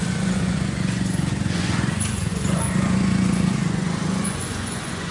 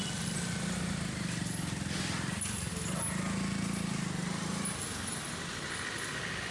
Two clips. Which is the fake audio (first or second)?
first